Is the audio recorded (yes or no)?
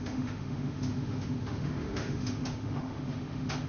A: no